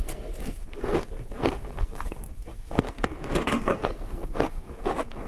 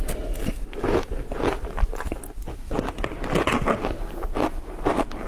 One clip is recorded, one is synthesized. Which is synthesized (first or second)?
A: first